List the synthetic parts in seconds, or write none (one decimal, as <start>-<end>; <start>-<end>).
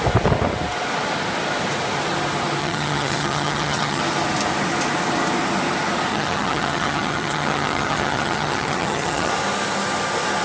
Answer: 2.6-4.0; 6.1-9.3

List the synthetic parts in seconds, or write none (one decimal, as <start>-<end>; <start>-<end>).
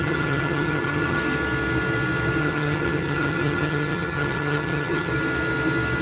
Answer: 0.0-1.2; 2.4-5.1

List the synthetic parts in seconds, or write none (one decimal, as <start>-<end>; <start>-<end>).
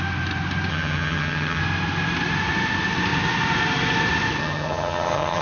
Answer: 0.7-1.6; 4.4-5.4